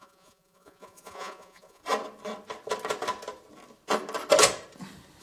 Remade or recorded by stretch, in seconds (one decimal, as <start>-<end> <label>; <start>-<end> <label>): 0.0-1.8 remade; 1.8-5.2 recorded